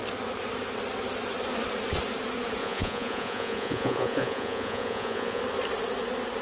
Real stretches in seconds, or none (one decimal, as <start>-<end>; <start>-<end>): 0.0-2.6; 5.4-6.4